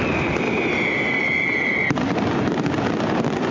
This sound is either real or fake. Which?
real